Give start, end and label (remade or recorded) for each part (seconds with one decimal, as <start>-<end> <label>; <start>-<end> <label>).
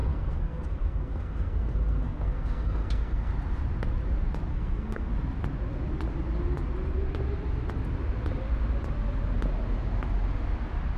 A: 0.0-3.3 remade; 3.3-4.5 recorded; 4.5-5.1 remade; 5.1-11.0 recorded